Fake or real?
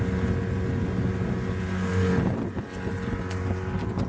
real